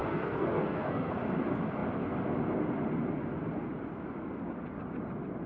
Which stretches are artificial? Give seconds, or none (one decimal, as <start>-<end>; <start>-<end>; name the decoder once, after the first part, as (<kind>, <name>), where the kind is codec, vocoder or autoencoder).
0.0-1.1 (codec, SNAC)